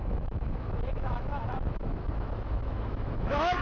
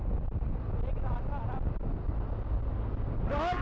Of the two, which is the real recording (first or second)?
second